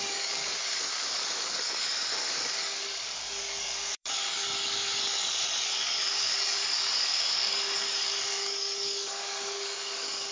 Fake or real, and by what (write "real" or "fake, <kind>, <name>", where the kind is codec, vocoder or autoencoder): fake, codec, DAC